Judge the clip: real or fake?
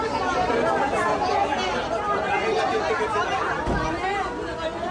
real